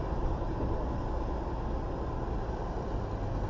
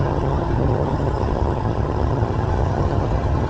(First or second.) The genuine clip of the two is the first